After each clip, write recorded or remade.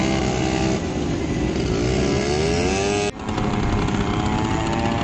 recorded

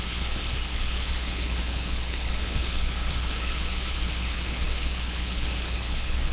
remade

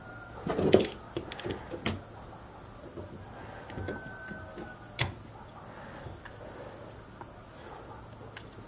recorded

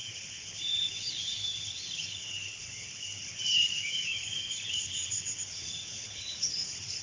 remade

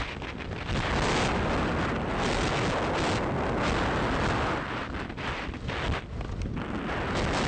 recorded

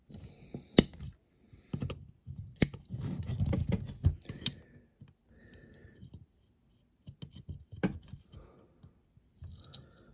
recorded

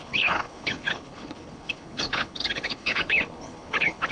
remade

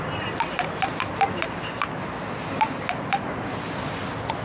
recorded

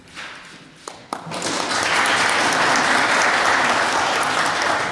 recorded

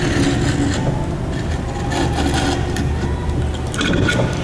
recorded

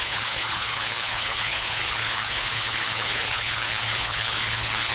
remade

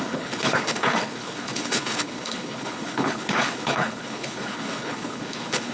remade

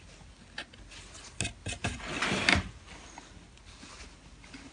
recorded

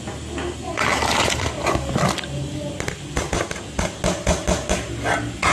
recorded